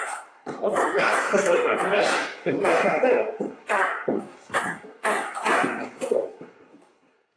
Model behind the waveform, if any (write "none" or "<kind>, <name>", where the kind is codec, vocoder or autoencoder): codec, SNAC